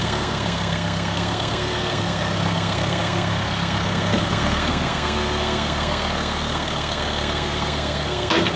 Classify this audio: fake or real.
fake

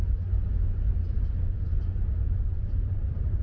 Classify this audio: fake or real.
fake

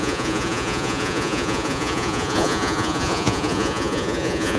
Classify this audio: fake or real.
fake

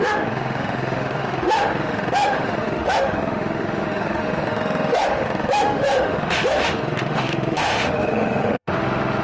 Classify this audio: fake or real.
fake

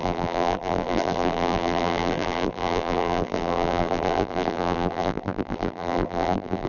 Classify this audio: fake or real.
fake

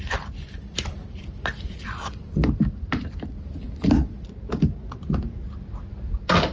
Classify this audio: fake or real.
real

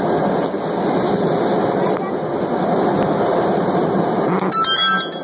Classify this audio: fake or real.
real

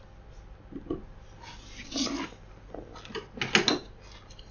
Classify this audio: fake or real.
real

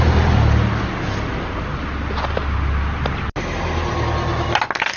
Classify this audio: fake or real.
real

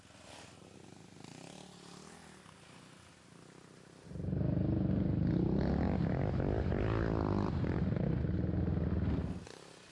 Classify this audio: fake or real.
real